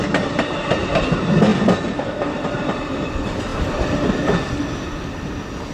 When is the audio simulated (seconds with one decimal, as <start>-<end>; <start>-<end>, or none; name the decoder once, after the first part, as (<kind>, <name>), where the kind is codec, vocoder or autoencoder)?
none